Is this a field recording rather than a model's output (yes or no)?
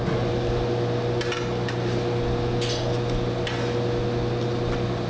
yes